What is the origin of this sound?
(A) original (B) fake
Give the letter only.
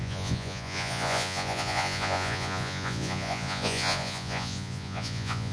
B